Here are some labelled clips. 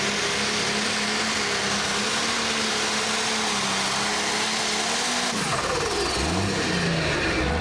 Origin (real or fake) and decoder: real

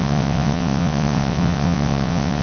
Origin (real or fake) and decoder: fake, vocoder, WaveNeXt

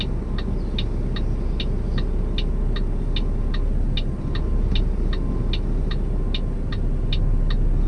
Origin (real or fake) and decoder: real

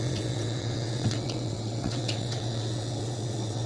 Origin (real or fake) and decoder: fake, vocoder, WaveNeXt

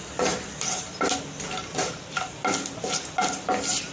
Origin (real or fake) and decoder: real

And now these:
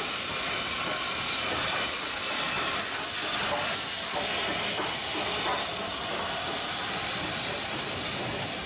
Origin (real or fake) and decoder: real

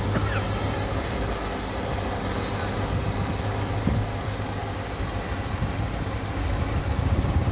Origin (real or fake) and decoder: real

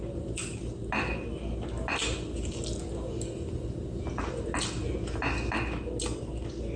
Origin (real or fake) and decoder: real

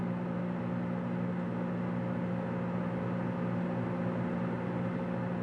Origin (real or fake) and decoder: real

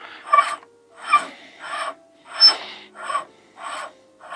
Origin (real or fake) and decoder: real